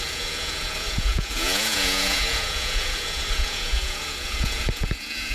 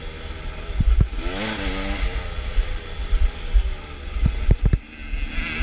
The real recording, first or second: second